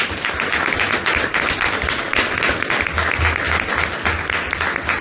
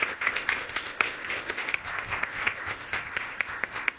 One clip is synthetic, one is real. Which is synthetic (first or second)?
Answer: second